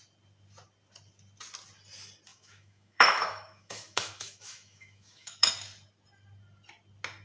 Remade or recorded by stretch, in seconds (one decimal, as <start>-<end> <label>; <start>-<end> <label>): 0.0-2.3 recorded; 2.3-5.5 remade; 5.5-7.2 recorded